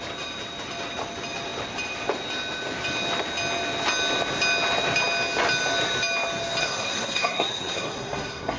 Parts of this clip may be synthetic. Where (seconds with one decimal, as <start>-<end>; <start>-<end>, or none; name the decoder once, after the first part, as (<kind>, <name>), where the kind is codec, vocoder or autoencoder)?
6.6-8.6 (codec, SNAC)